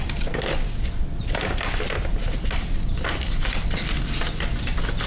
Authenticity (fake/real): real